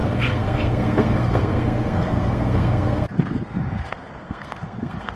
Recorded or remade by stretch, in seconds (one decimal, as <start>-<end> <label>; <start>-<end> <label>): 0.0-5.2 remade